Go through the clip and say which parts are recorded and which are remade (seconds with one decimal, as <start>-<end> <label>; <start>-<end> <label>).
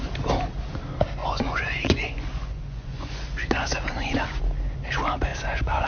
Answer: 0.0-1.2 recorded; 1.2-4.4 remade; 4.4-5.3 recorded; 5.3-5.9 remade